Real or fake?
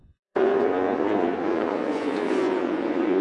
fake